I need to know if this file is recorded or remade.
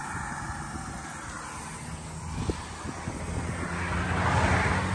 recorded